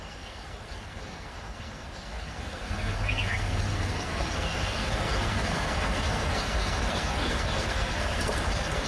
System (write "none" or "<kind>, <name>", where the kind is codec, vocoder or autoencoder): codec, SNAC